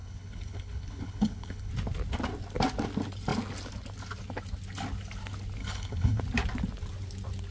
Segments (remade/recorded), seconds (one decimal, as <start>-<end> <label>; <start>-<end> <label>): 0.0-1.7 remade; 1.7-5.6 recorded; 5.6-6.2 remade; 6.2-7.5 recorded